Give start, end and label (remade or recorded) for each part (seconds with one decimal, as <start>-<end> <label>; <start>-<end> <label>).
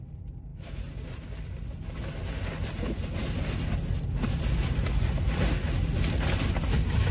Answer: 0.0-7.1 recorded